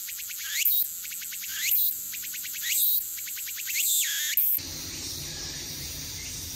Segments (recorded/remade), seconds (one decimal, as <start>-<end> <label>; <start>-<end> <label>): 0.0-1.5 recorded; 1.5-3.9 remade; 3.9-4.7 recorded; 4.7-6.6 remade